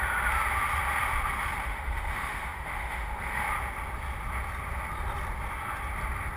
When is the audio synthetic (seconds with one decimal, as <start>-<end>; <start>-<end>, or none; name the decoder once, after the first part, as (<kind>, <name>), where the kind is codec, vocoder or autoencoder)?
1.4-3.5 (autoencoder, DAC-VAE)